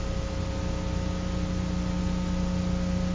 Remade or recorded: recorded